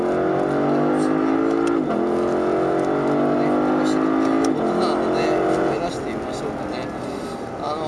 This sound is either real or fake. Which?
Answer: real